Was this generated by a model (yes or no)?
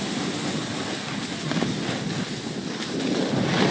no